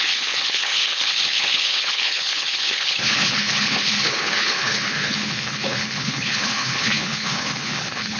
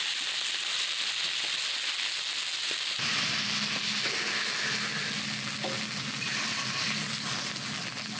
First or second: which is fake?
first